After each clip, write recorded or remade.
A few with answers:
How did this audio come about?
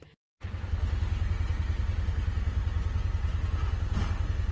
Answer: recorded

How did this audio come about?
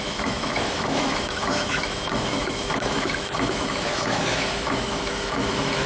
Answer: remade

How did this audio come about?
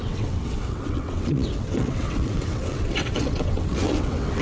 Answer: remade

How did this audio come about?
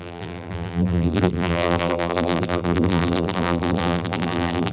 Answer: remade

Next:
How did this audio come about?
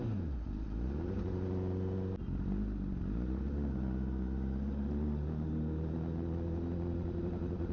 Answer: recorded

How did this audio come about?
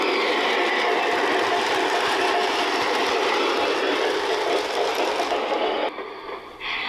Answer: recorded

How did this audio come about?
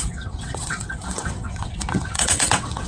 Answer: remade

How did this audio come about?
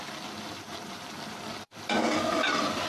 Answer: remade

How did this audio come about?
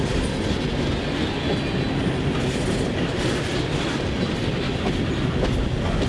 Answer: recorded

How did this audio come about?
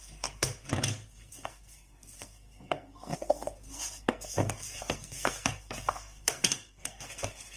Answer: remade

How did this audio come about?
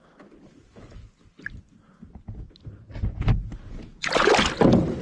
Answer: recorded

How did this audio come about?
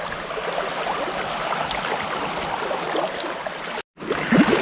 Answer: recorded